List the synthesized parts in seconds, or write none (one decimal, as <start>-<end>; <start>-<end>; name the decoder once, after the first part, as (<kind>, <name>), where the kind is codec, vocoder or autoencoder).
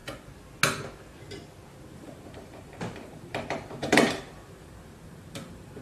1.9-5.8 (vocoder, BigVGAN v2)